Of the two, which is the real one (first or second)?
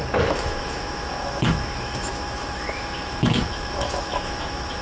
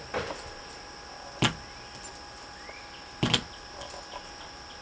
second